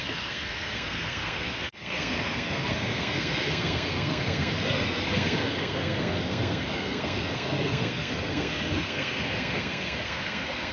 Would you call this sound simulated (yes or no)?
yes